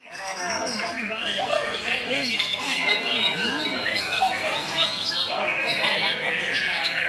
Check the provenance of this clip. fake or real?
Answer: fake